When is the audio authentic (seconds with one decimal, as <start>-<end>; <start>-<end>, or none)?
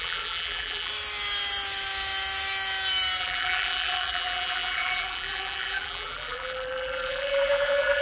0.9-3.2